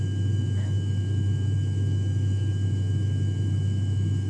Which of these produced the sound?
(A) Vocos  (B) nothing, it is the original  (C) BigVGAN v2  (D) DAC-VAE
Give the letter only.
D